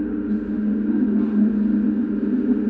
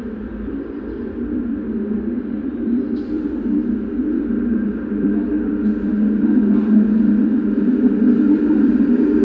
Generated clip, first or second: second